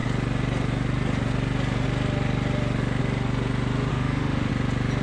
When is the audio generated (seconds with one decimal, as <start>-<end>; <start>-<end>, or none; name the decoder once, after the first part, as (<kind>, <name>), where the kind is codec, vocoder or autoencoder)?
3.9-4.5 (autoencoder, DAC-VAE)